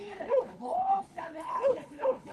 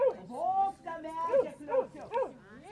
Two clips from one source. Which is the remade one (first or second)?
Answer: first